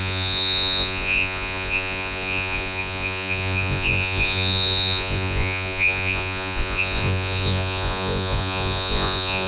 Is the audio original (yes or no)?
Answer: no